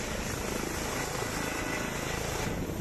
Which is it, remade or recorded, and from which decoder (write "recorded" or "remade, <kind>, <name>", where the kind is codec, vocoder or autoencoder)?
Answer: recorded